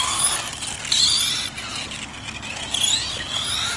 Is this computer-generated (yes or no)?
no